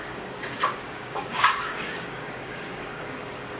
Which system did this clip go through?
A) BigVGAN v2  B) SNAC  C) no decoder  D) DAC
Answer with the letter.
D